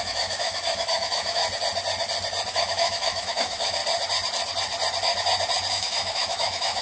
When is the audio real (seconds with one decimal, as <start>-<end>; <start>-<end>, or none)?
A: 1.4-2.5; 3.8-5.7